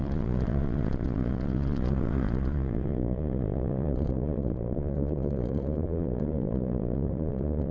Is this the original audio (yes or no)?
no